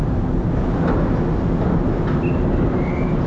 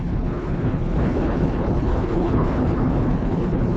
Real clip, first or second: first